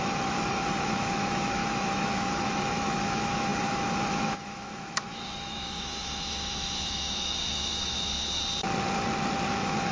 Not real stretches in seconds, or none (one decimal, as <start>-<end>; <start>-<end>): 0.0-8.4; 9.5-9.9